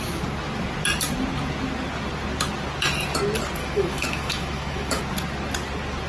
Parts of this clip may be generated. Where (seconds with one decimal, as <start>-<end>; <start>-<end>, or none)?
3.6-5.0